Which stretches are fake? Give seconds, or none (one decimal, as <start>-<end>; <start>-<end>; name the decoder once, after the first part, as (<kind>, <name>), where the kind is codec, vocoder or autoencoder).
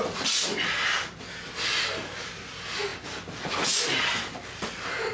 none